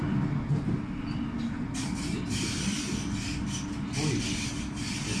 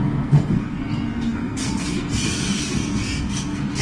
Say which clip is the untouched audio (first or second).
first